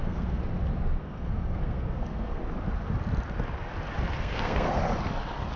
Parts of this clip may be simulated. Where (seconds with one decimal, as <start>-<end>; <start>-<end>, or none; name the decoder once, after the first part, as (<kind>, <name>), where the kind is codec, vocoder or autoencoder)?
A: 0.0-0.4 (codec, SNAC); 1.0-2.4; 4.2-4.8